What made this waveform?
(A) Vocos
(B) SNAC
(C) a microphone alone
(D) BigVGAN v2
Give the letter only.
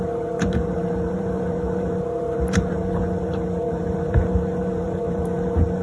D